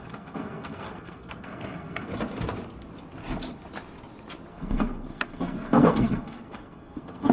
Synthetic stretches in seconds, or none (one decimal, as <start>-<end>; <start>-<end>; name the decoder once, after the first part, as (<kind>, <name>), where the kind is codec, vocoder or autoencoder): 0.0-2.1 (codec, SNAC); 4.5-7.3